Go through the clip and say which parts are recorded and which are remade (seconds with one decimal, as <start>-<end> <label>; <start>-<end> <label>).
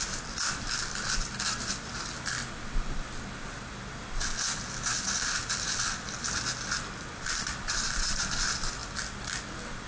0.0-9.9 recorded